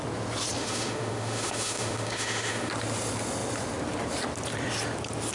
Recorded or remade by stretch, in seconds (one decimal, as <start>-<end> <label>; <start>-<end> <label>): 0.0-0.6 recorded; 0.6-2.7 remade; 2.7-5.3 recorded